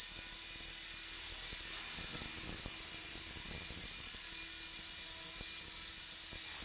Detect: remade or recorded recorded